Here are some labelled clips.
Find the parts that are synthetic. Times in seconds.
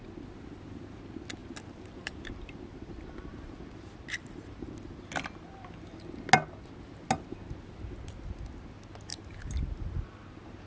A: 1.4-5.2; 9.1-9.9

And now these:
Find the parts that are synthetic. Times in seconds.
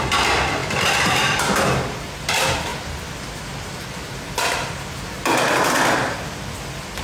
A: 0.0-2.7; 5.7-7.0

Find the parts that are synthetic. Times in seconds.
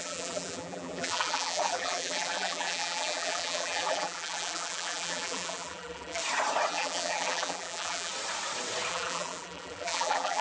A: 0.0-6.2; 6.7-8.1; 8.9-10.4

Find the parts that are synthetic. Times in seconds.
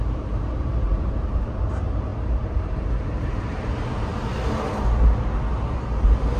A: 0.0-4.1; 6.0-6.4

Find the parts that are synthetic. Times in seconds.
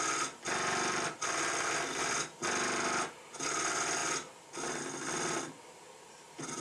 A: none